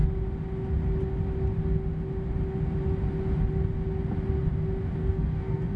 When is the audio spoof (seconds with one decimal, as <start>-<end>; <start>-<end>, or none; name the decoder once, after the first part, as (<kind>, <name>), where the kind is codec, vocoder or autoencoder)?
5.0-5.8 (codec, SNAC)